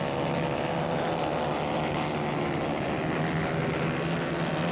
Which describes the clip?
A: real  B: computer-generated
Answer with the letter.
A